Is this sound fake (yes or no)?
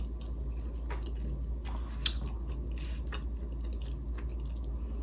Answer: no